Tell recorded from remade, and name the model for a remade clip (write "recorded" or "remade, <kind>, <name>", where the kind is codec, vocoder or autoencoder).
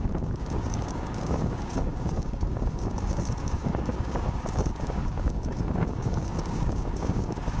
remade, codec, DAC